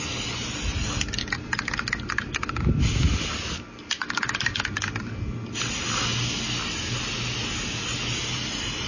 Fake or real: real